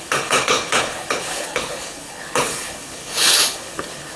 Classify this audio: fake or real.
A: fake